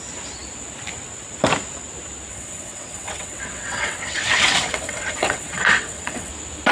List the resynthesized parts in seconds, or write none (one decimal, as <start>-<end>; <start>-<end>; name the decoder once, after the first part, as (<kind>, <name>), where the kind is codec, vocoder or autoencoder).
2.3-6.3 (vocoder, WaveNeXt)